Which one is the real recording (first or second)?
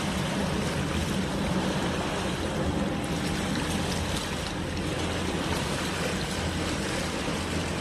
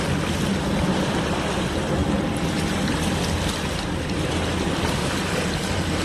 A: first